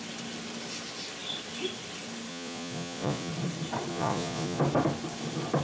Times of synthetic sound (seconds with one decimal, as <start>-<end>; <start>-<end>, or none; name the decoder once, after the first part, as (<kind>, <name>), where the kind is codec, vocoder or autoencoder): 2.3-3.3 (vocoder, Vocos); 3.9-4.6